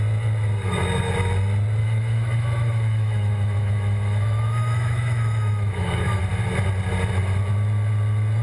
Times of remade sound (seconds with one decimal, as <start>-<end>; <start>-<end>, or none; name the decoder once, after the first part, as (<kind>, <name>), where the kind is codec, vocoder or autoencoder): 1.8-6.2 (autoencoder, DAC-VAE)